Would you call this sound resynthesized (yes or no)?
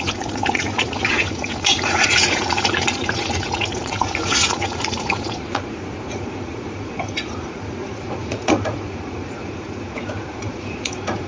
yes